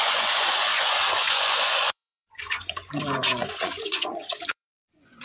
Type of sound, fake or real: fake